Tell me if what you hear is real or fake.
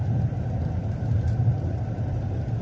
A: real